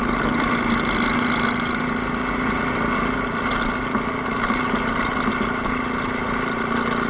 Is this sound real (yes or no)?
yes